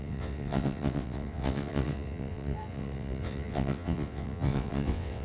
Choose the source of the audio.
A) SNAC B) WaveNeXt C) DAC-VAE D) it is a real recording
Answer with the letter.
B